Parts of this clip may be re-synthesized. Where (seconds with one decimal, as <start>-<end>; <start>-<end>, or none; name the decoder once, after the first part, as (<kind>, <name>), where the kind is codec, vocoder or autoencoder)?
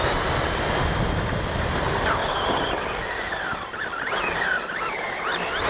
0.0-2.2 (vocoder, BigVGAN v2)